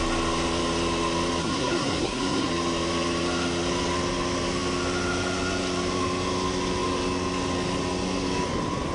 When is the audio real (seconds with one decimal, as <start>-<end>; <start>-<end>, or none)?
0.0-1.4; 2.5-8.9